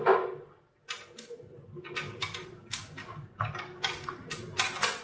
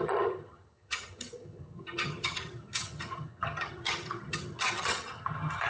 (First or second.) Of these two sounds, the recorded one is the first